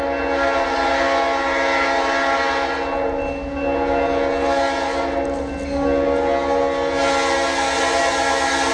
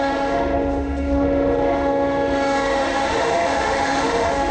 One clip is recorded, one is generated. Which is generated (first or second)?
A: second